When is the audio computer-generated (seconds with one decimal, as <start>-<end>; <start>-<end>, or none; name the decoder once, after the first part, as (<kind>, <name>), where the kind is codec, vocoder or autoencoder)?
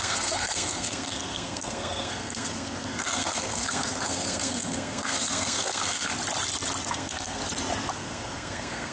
0.0-6.1 (codec, SNAC); 6.9-7.4; 7.9-8.9